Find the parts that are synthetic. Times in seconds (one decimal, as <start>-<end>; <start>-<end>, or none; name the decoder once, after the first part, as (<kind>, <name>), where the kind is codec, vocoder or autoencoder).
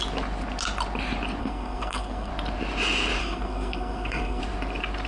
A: 1.4-2.3 (codec, SNAC); 3.2-4.4